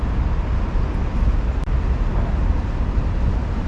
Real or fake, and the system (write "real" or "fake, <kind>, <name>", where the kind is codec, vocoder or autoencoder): real